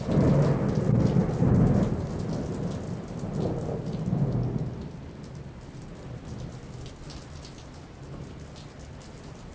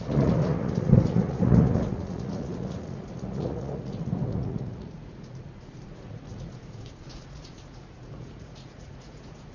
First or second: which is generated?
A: second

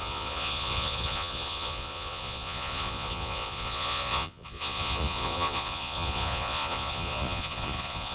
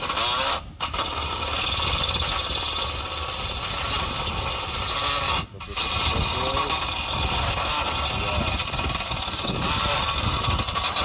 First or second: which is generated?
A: first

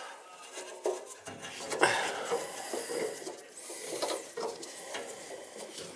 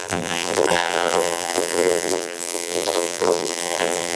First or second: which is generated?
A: second